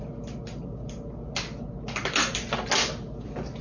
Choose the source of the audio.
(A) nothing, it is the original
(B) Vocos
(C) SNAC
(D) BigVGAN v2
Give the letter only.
A